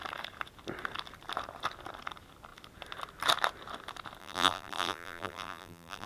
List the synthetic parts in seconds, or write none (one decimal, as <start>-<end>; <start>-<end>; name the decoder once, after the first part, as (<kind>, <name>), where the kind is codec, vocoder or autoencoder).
4.2-6.1 (vocoder, BigVGAN v2)